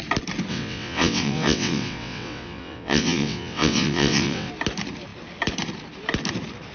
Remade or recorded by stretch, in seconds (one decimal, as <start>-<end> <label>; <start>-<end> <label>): 0.0-0.5 recorded; 0.5-4.5 remade; 4.5-6.7 recorded